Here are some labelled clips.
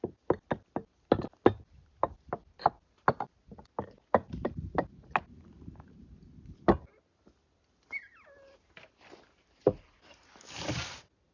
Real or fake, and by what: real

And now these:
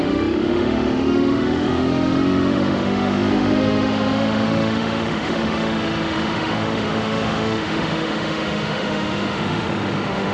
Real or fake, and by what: fake, autoencoder, DAC-VAE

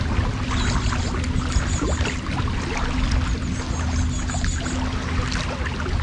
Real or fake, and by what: real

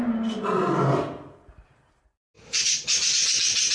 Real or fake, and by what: real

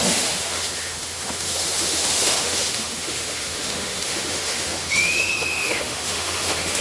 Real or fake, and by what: fake, autoencoder, DAC-VAE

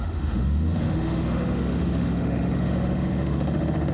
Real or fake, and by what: fake, autoencoder, DAC-VAE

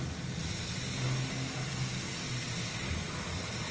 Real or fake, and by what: real